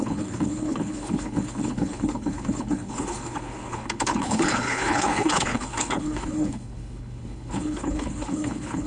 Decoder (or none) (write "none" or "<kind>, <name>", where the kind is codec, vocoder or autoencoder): codec, HILCodec